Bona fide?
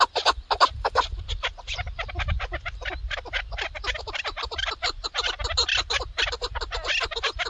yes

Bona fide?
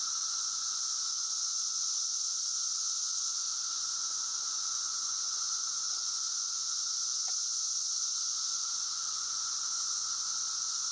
no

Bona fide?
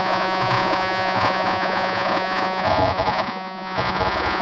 no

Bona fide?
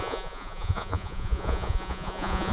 no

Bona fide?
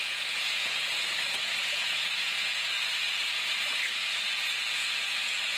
no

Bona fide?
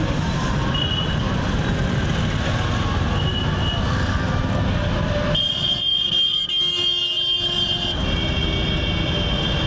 yes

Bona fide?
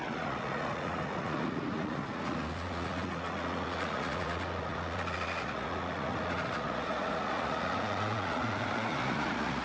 no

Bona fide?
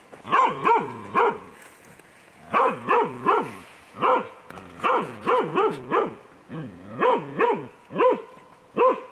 no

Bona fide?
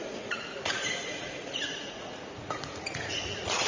no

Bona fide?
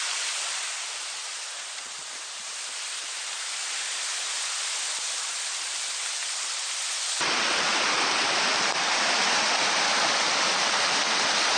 yes